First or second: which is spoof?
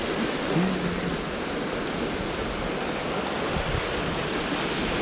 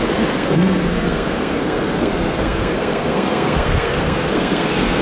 second